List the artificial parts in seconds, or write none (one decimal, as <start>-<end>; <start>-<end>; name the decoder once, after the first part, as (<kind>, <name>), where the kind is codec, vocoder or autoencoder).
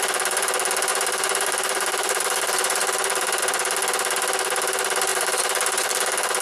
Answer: 0.9-3.4 (vocoder, BigVGAN v2); 5.1-6.4